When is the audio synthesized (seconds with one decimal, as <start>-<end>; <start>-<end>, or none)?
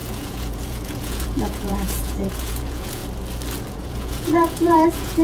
0.0-3.0; 3.7-5.2